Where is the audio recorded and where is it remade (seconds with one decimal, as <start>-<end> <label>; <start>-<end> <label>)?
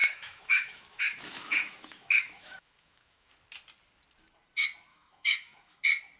0.0-3.3 remade; 3.3-4.9 recorded; 4.9-5.8 remade; 5.8-6.2 recorded